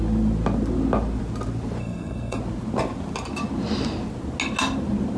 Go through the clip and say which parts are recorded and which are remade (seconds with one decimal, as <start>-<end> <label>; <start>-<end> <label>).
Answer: 0.0-1.8 recorded; 1.8-2.4 remade; 2.4-5.2 recorded